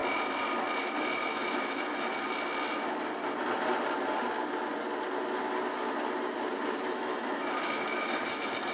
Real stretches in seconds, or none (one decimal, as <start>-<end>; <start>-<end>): 0.0-0.8; 2.1-6.9